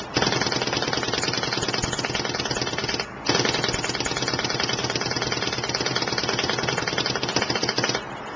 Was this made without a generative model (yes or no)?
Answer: yes